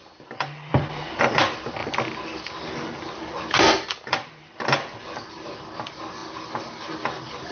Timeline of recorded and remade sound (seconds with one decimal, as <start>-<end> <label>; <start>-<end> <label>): 0.0-7.5 recorded